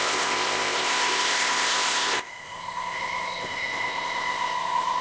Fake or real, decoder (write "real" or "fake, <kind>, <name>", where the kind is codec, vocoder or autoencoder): fake, codec, ZipCodec